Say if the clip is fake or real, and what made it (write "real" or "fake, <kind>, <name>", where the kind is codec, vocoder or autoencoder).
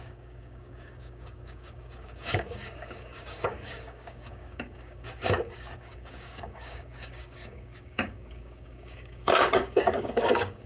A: fake, codec, DAC